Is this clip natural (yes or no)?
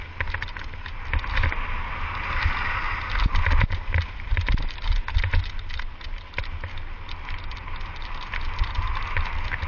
yes